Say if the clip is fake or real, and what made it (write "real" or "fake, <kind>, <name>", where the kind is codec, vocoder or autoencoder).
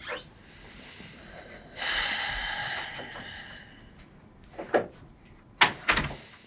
real